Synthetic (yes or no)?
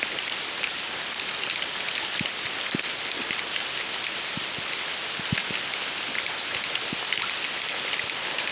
no